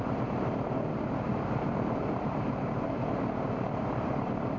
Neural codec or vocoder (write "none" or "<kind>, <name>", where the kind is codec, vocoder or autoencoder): vocoder, BigVGAN v2